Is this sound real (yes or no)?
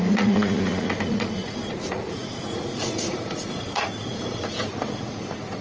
no